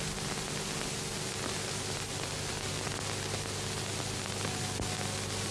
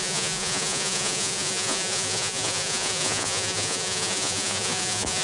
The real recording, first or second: first